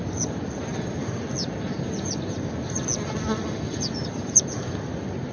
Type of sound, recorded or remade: recorded